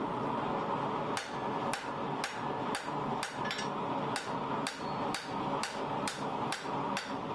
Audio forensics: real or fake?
real